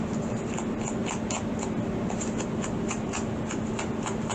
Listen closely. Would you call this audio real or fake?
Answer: real